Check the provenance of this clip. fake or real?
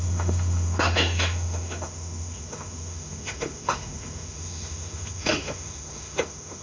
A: fake